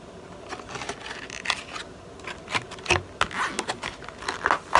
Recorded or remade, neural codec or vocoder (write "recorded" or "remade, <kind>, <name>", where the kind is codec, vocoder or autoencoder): recorded